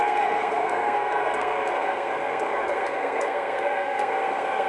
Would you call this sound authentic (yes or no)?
no